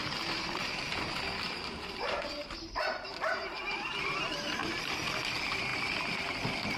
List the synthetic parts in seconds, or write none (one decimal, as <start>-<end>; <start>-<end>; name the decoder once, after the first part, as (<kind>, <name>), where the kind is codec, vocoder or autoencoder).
0.0-4.1 (vocoder, BigVGAN v2); 4.6-5.3